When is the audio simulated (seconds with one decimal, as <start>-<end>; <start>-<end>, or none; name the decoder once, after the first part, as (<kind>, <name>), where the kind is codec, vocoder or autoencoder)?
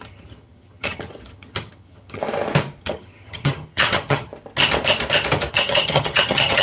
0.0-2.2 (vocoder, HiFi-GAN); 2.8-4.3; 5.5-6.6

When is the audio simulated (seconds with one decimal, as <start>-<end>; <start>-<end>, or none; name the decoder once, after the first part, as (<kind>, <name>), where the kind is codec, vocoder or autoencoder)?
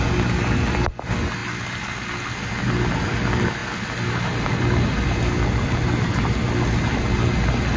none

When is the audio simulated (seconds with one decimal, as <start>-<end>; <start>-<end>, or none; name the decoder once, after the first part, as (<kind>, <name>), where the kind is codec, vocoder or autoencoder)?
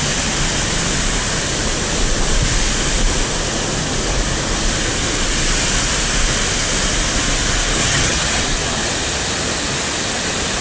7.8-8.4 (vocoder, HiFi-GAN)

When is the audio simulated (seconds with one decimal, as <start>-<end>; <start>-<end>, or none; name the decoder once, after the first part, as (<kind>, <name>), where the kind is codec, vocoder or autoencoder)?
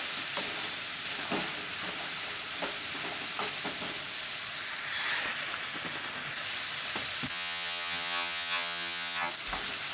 7.3-9.3 (vocoder, HiFi-GAN)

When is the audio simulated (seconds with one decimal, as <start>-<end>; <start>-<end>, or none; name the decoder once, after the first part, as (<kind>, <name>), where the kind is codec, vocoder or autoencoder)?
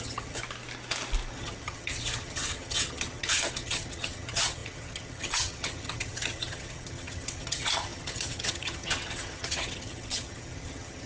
0.0-0.4 (vocoder, HiFi-GAN); 1.3-11.1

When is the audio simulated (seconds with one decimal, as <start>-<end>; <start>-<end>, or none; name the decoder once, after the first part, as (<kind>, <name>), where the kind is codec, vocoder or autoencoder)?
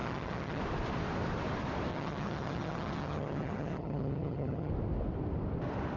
0.0-0.6 (vocoder, HiFi-GAN); 1.9-4.7